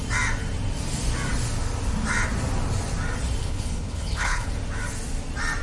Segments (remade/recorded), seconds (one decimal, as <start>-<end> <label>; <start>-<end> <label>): 0.0-3.4 recorded; 3.4-4.5 remade; 4.5-5.6 recorded